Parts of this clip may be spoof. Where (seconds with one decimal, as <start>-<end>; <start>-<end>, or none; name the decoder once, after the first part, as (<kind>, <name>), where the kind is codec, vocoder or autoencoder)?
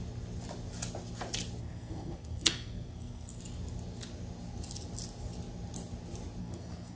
1.6-3.4 (codec, SNAC); 6.4-7.0